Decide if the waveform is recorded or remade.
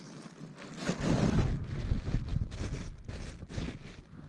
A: recorded